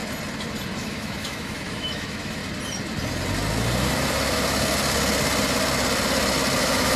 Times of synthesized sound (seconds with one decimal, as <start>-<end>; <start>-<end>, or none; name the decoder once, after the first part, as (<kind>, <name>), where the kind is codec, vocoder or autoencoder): 0.8-2.4 (autoencoder, DAC-VAE); 6.6-7.0